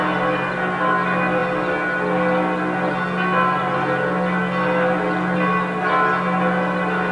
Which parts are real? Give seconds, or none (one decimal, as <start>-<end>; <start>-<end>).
0.0-7.1